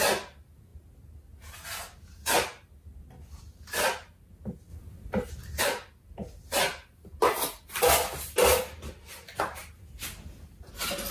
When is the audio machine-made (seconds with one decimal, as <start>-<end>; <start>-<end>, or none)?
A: none